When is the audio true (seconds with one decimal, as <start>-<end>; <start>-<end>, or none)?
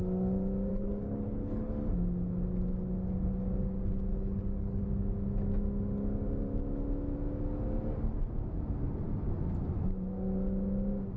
0.0-0.7; 1.7-4.1; 4.8-11.2